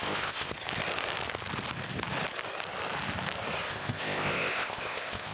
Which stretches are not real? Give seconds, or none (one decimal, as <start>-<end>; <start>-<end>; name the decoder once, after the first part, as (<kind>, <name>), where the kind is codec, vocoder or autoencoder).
0.0-0.5 (codec, ZipCodec); 3.7-5.3